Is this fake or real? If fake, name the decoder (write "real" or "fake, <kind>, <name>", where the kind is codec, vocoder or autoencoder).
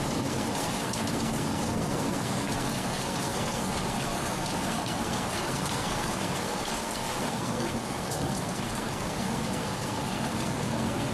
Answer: fake, codec, SNAC